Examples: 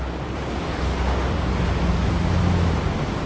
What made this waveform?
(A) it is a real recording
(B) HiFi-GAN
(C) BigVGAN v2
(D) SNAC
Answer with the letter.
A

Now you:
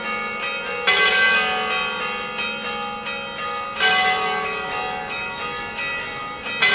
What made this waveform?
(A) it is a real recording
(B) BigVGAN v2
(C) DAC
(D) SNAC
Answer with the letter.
A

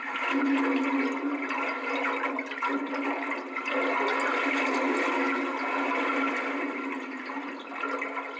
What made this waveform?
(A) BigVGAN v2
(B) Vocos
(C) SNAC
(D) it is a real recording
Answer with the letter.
D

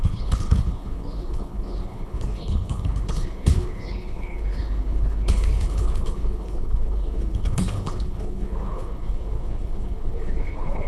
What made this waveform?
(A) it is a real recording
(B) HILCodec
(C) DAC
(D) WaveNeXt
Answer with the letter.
B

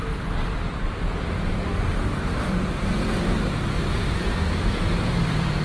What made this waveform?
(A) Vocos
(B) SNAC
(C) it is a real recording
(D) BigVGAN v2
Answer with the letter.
D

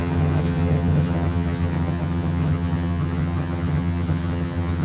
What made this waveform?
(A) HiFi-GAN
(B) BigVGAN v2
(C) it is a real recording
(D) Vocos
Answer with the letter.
A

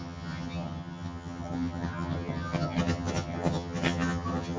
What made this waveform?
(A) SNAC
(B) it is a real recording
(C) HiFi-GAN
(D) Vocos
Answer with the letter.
C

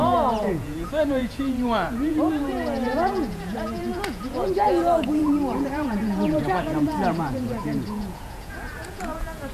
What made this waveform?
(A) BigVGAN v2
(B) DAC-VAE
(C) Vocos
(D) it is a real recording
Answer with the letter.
C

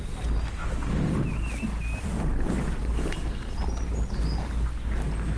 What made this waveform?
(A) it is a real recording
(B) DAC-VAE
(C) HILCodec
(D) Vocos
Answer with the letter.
A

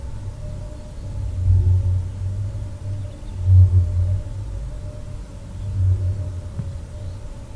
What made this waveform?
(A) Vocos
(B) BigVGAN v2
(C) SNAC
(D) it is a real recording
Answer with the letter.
D